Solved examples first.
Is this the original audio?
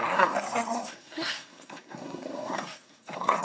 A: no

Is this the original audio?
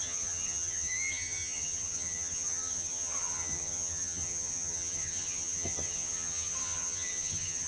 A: no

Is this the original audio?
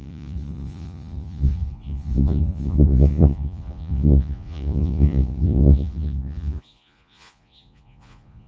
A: no